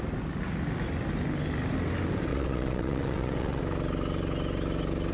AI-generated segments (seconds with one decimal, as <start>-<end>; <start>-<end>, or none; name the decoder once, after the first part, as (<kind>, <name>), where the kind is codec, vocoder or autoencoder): 2.3-3.6 (vocoder, WaveNeXt)